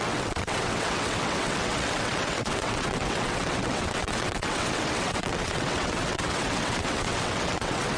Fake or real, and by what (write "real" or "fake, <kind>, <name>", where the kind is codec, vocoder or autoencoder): fake, vocoder, WaveNeXt